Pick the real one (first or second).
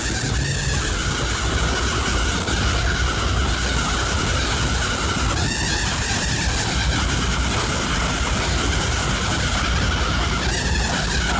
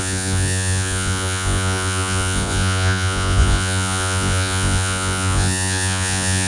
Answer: first